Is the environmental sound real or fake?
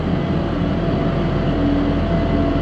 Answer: real